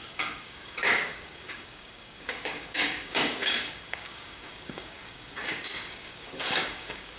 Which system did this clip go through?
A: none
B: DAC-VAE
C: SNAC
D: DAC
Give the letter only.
D